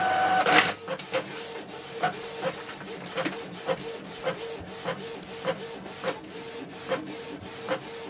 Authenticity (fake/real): real